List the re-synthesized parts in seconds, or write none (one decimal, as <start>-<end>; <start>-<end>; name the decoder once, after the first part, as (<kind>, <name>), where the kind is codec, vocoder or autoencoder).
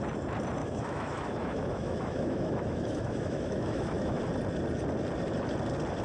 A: 0.6-4.2 (autoencoder, DAC-VAE)